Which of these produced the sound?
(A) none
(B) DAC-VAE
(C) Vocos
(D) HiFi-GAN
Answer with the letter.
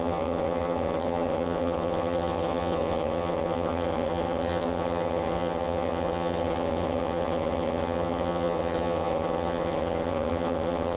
D